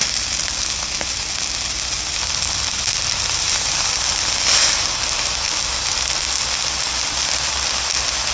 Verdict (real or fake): real